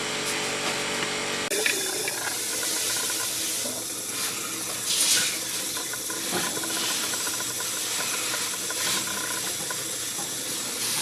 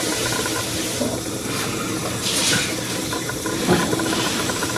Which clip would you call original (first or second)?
first